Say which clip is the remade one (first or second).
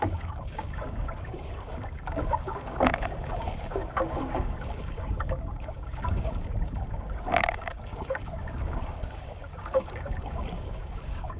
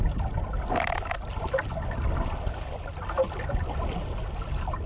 first